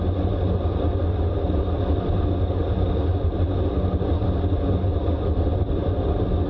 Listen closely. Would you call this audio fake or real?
real